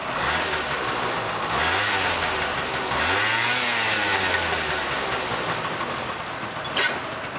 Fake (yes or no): no